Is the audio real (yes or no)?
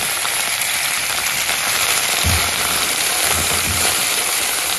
no